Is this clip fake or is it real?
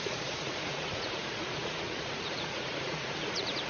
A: fake